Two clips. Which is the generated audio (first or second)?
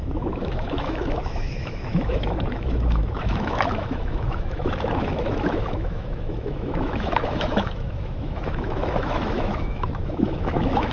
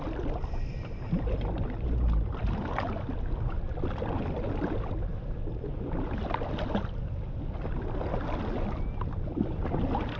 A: first